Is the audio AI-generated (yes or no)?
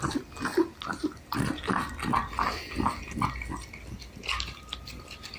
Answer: no